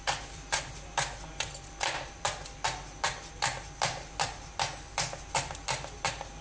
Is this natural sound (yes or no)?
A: yes